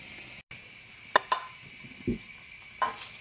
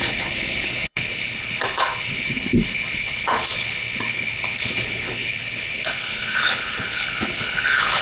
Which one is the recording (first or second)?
first